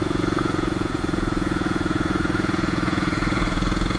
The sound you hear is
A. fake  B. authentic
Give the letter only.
A